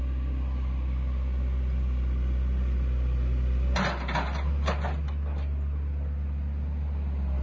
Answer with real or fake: real